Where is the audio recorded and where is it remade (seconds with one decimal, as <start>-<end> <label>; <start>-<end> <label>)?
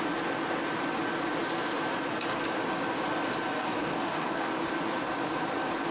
0.0-3.6 recorded; 3.6-4.5 remade; 4.5-5.9 recorded